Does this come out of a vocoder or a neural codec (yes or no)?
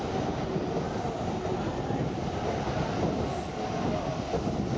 no